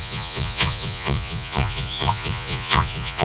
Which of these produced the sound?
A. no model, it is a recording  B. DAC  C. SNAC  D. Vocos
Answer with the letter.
D